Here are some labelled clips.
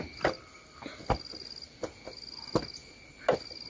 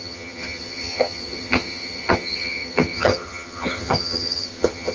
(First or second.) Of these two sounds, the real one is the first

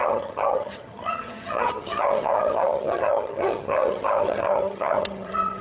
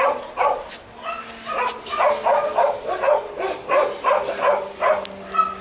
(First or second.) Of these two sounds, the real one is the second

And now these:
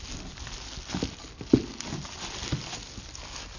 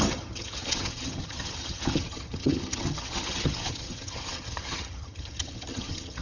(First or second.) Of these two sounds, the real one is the first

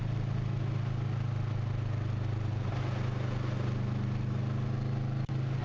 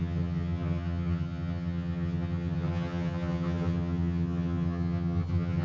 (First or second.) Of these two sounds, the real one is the first